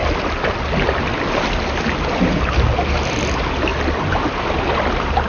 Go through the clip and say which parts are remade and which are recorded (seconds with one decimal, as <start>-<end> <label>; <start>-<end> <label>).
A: 0.0-5.3 recorded